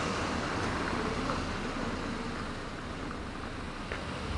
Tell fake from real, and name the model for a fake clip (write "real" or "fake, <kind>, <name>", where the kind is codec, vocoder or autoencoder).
real